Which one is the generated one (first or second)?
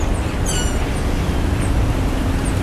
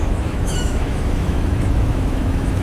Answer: second